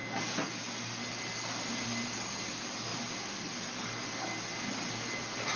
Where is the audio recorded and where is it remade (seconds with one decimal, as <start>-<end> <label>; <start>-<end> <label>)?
0.0-5.6 recorded